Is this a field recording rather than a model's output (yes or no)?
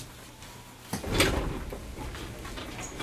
yes